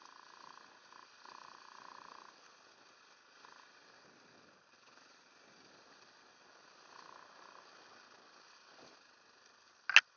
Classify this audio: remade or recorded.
recorded